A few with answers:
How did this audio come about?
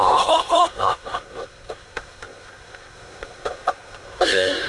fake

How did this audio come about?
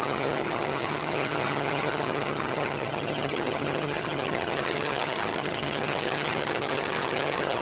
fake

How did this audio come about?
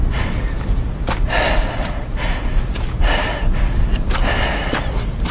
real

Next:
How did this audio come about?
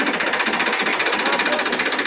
real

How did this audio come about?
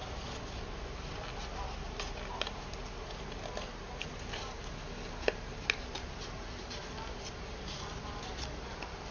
real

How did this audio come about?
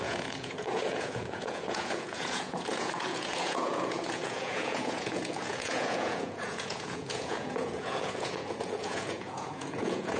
fake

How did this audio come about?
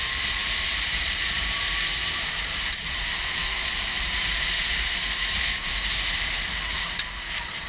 fake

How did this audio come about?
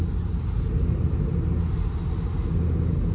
real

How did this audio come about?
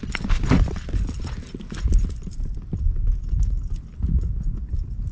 real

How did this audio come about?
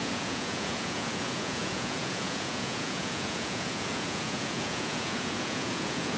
fake